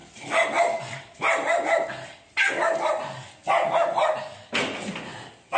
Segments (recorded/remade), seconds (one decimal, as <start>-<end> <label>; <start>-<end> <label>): 0.0-5.6 recorded